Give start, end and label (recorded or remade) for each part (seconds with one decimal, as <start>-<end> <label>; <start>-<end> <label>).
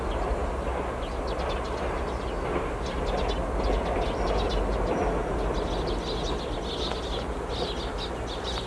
0.0-8.7 recorded